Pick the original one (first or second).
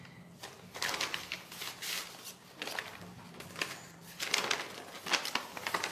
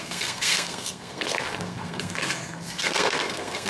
first